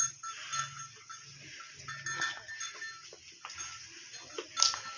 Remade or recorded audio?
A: recorded